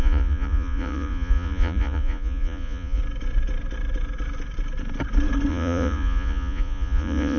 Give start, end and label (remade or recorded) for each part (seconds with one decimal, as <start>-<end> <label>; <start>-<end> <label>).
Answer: 0.0-3.0 remade; 3.0-5.5 recorded; 5.5-7.4 remade

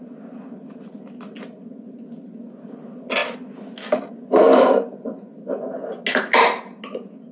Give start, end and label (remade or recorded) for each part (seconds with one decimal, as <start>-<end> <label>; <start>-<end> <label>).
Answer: 0.0-7.3 recorded